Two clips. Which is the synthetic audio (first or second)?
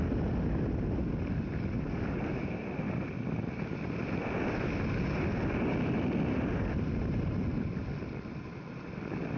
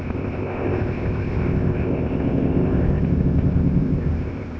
second